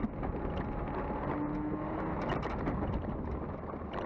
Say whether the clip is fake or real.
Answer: real